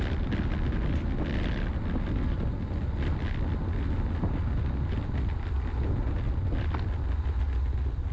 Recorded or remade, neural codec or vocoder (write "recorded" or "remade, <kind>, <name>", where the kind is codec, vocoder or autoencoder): recorded